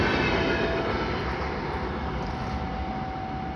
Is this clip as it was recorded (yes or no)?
yes